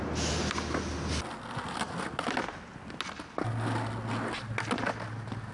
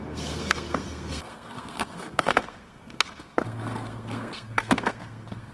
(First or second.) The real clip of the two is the first